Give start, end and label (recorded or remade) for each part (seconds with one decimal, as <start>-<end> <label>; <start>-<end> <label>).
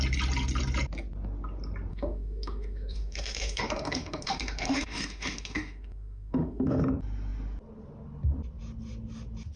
0.0-1.9 recorded; 1.9-6.8 remade; 6.8-9.6 recorded